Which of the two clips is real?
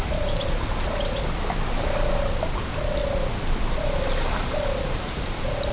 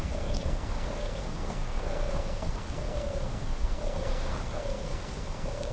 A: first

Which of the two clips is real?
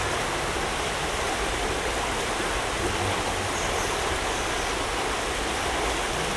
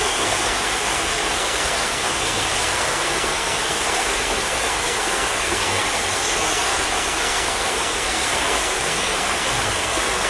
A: first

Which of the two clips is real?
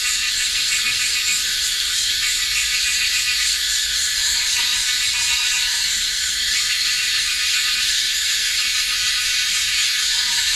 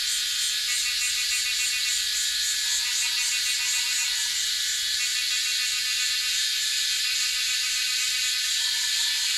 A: second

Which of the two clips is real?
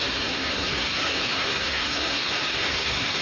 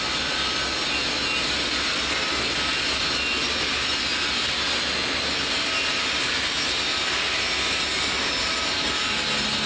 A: second